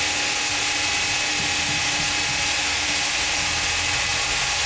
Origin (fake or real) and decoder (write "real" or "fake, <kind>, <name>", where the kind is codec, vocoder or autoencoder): real